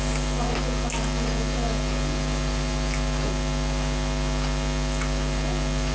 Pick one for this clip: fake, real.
real